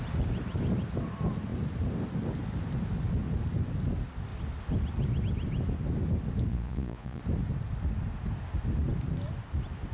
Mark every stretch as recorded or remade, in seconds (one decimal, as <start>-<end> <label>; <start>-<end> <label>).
0.0-6.5 recorded; 6.5-7.2 remade; 7.2-9.9 recorded